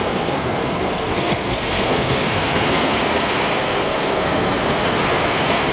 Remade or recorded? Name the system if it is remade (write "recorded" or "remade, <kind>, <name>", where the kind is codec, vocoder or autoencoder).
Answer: remade, codec, SNAC